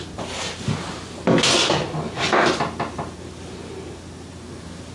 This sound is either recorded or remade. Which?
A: recorded